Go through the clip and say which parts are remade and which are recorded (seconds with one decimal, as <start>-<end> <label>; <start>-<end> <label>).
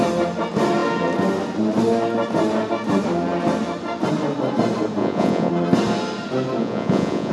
0.0-5.0 recorded; 5.0-5.5 remade; 5.5-6.6 recorded; 6.6-7.3 remade